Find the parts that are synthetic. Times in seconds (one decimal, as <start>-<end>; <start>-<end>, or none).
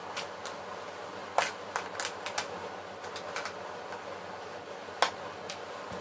none